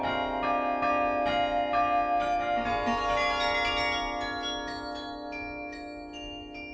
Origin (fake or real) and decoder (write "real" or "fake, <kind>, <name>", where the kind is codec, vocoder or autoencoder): real